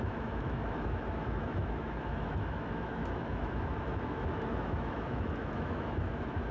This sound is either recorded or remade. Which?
remade